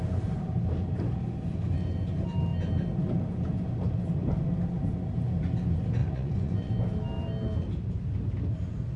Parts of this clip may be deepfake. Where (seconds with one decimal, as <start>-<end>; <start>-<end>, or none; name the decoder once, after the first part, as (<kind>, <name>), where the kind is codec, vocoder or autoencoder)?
6.0-6.7 (vocoder, Vocos)